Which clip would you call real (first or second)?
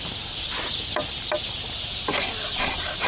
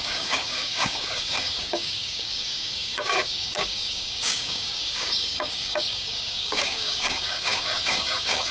first